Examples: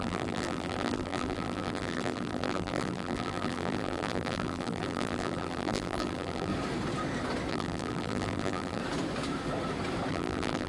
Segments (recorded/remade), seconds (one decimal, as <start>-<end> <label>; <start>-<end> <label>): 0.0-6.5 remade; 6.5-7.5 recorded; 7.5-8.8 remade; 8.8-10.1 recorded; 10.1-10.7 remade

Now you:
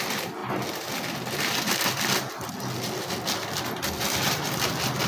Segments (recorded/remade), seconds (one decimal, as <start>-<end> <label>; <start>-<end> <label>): 0.0-5.1 recorded

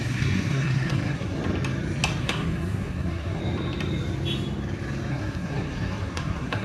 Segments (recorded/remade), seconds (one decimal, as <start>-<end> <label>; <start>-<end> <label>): 0.0-1.4 remade; 1.4-2.2 recorded; 2.2-3.4 remade; 3.4-5.1 recorded; 5.1-6.6 remade

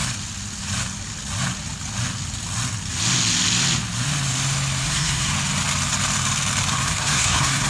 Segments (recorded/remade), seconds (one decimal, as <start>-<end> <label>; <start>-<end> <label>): 0.0-4.8 recorded; 4.8-5.3 remade; 5.3-6.7 recorded; 6.7-7.7 remade